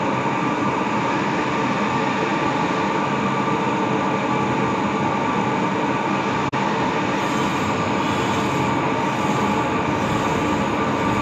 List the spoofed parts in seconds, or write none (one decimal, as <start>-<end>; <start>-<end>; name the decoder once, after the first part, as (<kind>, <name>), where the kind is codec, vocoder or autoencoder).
none